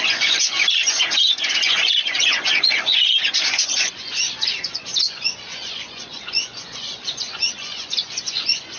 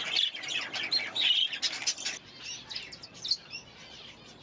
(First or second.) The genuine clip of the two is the second